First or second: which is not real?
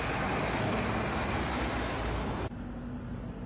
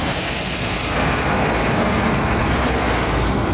second